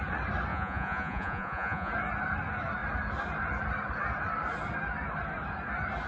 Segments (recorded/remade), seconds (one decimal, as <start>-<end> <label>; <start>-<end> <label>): 0.0-0.5 recorded; 0.5-1.9 remade; 1.9-6.1 recorded